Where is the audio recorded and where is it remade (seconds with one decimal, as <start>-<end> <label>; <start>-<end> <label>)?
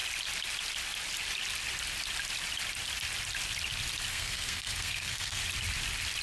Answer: 0.0-4.1 recorded; 4.1-5.4 remade; 5.4-6.2 recorded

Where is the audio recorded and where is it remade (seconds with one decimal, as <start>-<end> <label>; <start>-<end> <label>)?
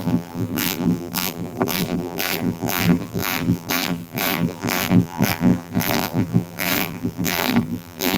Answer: 0.0-8.2 remade